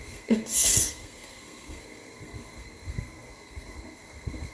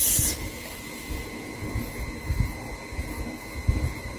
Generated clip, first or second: first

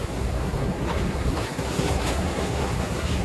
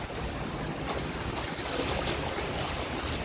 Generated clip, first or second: first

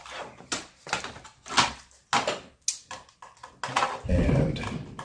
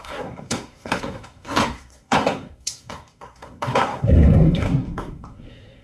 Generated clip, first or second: second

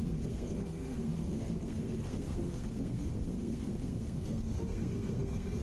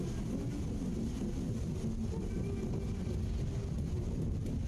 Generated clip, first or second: first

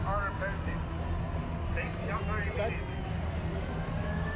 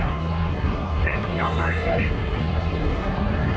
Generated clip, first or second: second